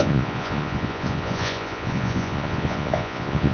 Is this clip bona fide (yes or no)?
no